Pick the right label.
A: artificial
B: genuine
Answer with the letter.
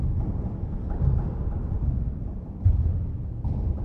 A